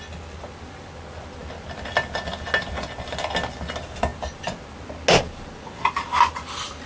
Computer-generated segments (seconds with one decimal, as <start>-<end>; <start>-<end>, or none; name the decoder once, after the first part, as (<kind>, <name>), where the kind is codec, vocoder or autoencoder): none